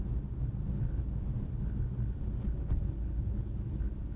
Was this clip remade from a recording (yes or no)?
no